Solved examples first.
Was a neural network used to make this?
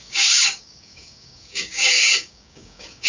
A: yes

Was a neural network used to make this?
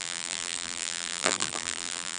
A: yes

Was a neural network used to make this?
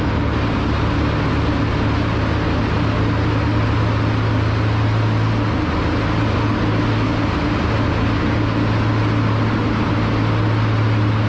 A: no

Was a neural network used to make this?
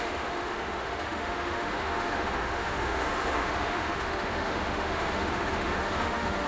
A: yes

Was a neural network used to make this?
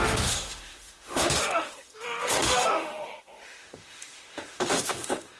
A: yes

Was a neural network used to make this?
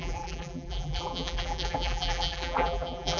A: yes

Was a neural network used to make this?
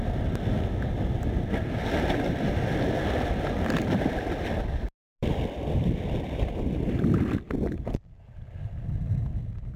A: no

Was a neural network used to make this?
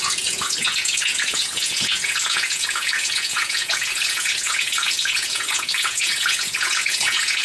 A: yes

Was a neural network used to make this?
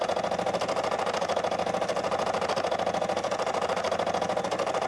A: no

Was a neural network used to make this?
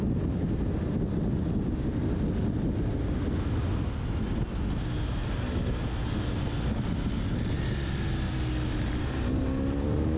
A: no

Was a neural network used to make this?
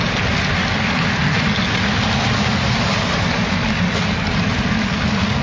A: no